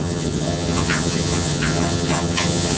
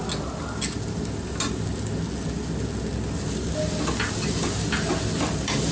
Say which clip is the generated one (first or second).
first